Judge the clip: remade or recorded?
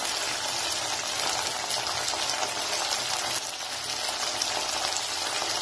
recorded